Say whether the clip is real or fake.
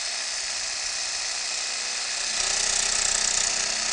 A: real